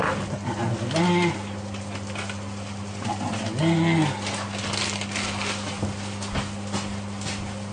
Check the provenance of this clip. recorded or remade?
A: recorded